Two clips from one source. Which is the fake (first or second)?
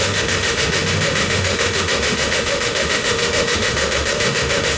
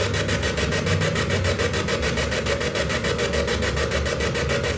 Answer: first